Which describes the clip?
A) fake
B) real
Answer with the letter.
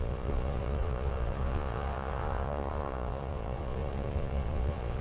A